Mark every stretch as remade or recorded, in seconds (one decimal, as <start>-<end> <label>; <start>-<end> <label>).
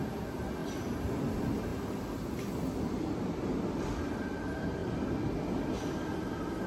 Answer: 0.0-6.7 recorded